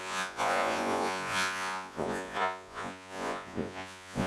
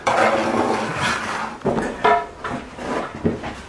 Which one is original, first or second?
second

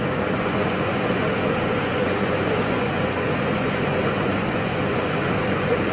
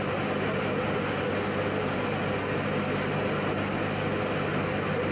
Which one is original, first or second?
second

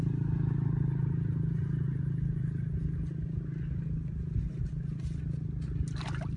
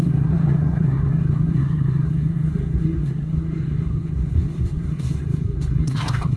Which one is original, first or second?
first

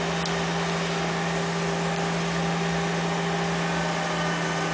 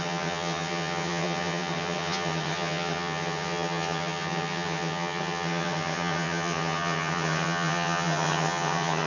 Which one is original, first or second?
first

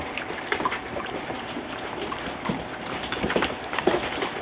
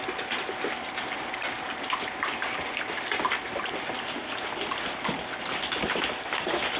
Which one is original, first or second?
second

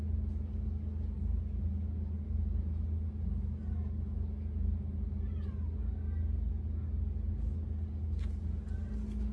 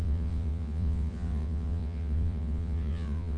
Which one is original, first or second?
first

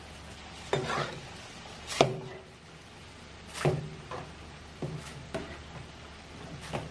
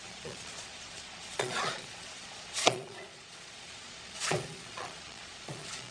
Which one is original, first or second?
first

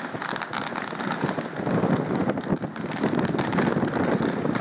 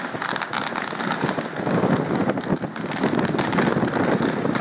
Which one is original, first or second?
second